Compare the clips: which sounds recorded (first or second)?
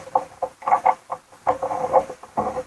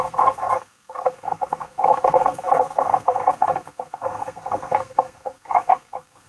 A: first